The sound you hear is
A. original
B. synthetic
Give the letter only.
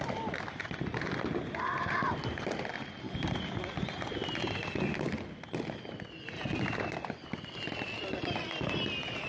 A